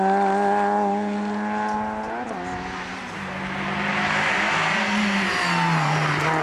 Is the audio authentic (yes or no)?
yes